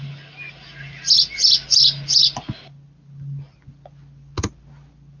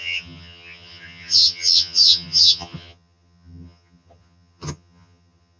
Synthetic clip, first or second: second